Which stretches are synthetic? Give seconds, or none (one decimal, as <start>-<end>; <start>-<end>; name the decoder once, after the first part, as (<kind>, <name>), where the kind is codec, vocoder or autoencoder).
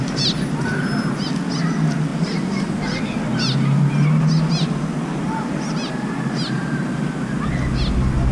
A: none